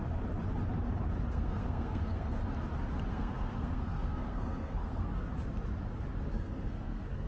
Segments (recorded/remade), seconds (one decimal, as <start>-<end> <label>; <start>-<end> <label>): 0.0-1.3 recorded; 1.3-2.4 remade; 2.4-3.1 recorded; 3.1-5.3 remade; 5.3-6.3 recorded; 6.3-7.3 remade